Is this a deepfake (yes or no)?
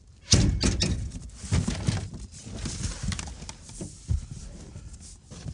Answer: no